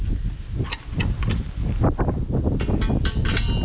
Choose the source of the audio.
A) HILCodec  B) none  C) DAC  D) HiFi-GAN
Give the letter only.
B